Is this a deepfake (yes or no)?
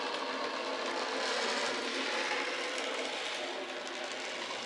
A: no